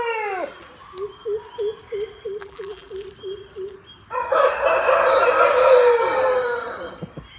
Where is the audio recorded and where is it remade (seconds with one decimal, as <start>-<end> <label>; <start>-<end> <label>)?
0.0-2.4 recorded; 2.4-2.9 remade; 2.9-7.4 recorded